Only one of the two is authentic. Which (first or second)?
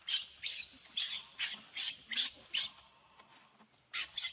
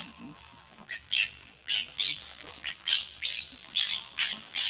first